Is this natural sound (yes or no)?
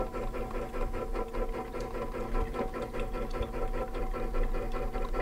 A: yes